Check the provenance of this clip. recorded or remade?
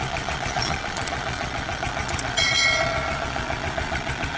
remade